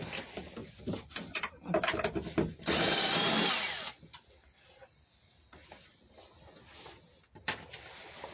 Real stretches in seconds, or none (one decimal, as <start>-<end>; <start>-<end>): 0.0-8.3